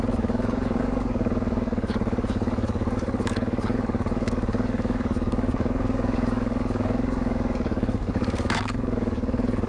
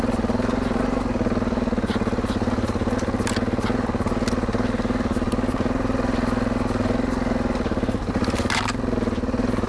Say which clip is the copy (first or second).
first